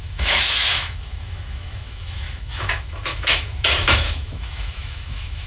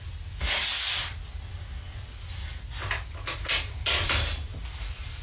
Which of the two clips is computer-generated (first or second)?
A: first